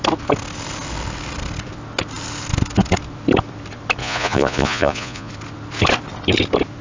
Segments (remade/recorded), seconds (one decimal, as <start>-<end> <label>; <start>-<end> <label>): 0.0-4.0 recorded; 4.0-5.3 remade; 5.3-6.8 recorded